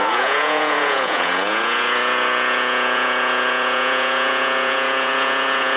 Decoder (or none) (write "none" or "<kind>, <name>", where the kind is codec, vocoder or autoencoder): vocoder, Vocos